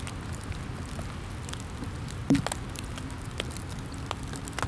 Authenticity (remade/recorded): recorded